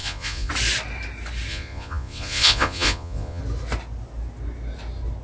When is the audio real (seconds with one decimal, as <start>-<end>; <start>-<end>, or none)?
0.5-1.5; 3.4-5.2